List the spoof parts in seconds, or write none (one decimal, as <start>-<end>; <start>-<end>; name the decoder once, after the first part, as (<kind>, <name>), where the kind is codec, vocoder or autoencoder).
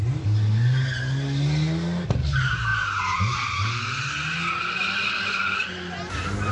none